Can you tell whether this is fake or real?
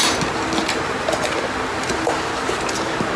real